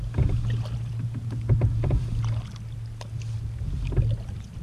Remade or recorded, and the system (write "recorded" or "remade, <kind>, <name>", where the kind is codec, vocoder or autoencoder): recorded